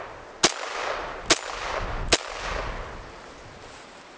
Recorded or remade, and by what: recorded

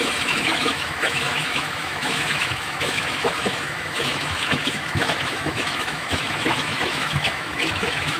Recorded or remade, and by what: remade, autoencoder, DAC-VAE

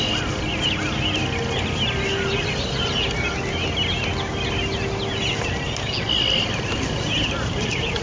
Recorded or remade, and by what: recorded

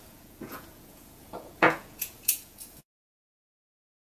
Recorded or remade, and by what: remade, vocoder, Vocos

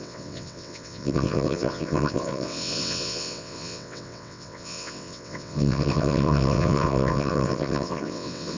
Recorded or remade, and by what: remade, vocoder, WaveNeXt